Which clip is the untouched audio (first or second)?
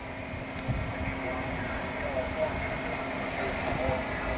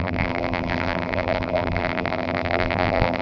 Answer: first